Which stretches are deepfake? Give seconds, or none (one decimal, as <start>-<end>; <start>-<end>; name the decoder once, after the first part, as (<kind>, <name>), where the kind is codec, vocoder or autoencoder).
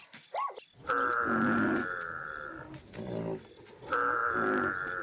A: none